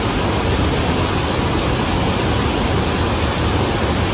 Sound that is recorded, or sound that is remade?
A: recorded